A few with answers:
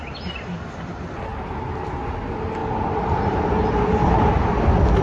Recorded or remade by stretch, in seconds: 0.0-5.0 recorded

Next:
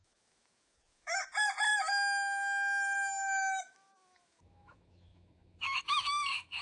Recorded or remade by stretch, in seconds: 0.0-1.2 remade; 1.2-3.6 recorded; 3.6-6.6 remade